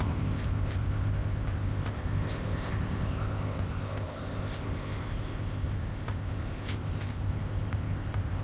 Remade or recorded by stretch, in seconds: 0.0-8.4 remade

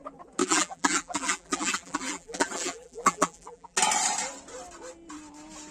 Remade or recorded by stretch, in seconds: 0.0-0.4 recorded; 0.4-3.8 remade; 3.8-5.7 recorded